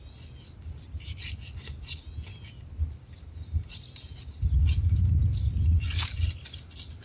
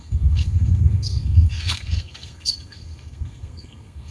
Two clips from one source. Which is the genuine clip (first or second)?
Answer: first